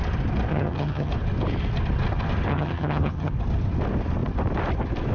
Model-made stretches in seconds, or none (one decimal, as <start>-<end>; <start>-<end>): 0.5-1.1; 2.5-3.3